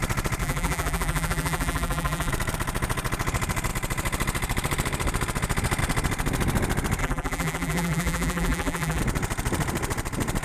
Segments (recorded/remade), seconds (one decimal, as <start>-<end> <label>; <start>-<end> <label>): 0.0-0.4 recorded; 0.4-2.3 remade; 2.3-7.0 recorded; 7.0-9.0 remade; 9.0-10.4 recorded

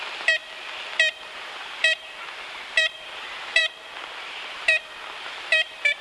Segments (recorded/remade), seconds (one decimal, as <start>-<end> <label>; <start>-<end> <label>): 0.0-0.4 remade; 0.4-1.1 recorded; 1.1-3.6 remade; 3.6-4.5 recorded; 4.5-6.0 remade

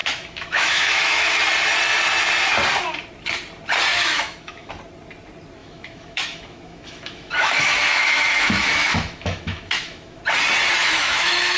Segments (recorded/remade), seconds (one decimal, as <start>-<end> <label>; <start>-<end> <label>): 0.0-1.4 remade; 1.4-3.9 recorded; 3.9-4.7 remade; 4.7-5.6 recorded; 5.6-10.2 remade; 10.2-10.8 recorded; 10.8-11.6 remade